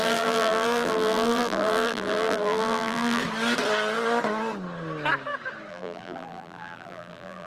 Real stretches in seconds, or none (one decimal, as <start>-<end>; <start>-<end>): 3.2-5.7